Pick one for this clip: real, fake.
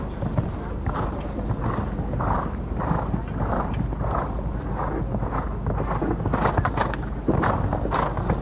real